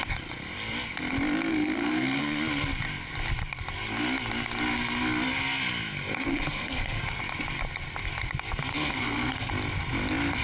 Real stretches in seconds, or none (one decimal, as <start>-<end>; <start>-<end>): 0.0-1.5; 2.2-6.3; 7.2-8.7; 9.5-10.4